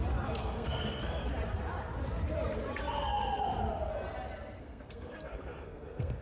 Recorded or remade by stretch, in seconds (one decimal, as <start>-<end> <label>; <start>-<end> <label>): 0.0-0.4 recorded; 0.4-1.3 remade; 1.3-4.6 recorded; 4.6-6.2 remade

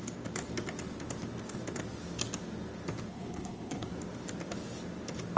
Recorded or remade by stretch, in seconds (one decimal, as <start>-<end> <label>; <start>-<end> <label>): 0.0-3.1 recorded; 3.1-3.9 remade; 3.9-5.4 recorded